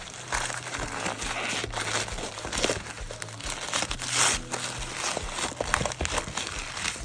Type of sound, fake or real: real